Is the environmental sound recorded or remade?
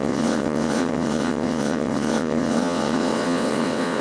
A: remade